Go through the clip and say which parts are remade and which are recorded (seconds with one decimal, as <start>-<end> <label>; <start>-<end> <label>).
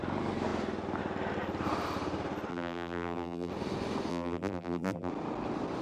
0.0-2.5 recorded; 2.5-3.5 remade; 3.5-4.1 recorded; 4.1-5.1 remade; 5.1-5.8 recorded